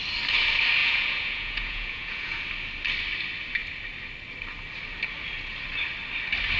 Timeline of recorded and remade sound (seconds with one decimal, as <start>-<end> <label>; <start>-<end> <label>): 0.0-0.8 recorded; 0.8-2.4 remade; 2.4-6.6 recorded